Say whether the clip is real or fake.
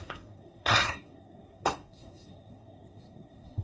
fake